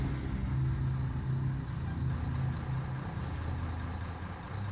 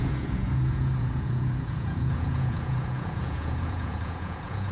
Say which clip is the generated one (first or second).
second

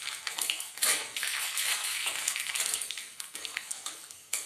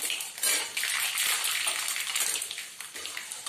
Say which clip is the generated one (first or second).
first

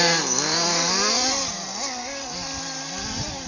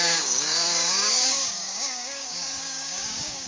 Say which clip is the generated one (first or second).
second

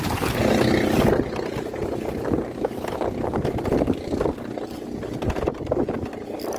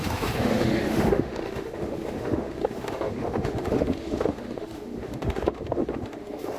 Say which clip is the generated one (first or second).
second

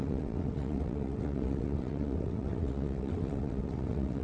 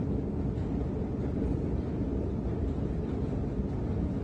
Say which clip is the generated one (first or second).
first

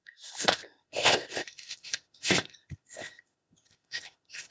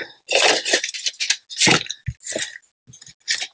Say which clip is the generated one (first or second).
first